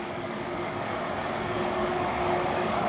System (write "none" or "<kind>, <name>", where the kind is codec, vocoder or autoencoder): codec, DAC